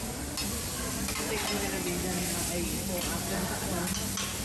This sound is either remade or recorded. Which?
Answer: recorded